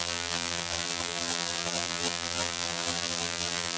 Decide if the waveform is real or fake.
fake